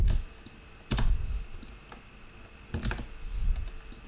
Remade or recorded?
recorded